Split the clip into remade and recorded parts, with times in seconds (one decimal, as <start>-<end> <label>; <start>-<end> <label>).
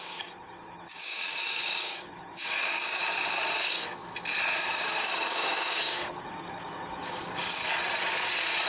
0.0-3.0 remade; 3.0-4.6 recorded; 4.6-7.2 remade; 7.2-8.7 recorded